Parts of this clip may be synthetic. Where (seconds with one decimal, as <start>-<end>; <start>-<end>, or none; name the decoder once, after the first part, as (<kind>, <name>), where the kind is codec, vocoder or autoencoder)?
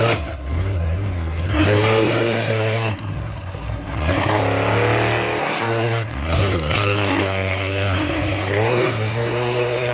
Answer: 0.0-4.4 (codec, SNAC); 5.4-9.9